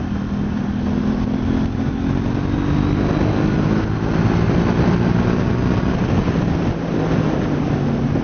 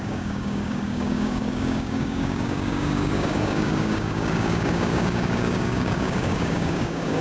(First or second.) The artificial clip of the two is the second